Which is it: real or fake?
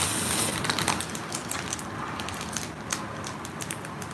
real